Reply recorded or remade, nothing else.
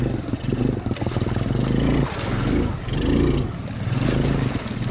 recorded